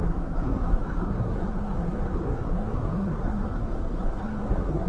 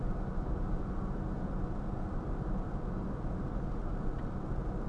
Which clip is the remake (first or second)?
first